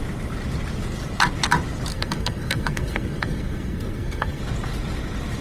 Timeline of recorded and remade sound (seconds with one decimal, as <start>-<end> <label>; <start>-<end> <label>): 0.0-1.9 recorded; 1.9-4.4 remade; 4.4-5.4 recorded

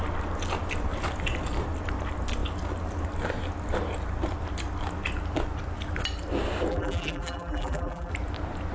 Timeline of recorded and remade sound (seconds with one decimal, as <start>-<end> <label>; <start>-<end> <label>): 0.0-6.7 recorded; 6.7-8.1 remade; 8.1-8.7 recorded